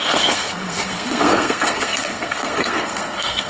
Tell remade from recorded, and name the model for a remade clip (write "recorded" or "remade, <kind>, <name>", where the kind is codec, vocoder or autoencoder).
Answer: remade, codec, SNAC